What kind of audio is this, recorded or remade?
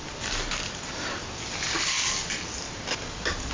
recorded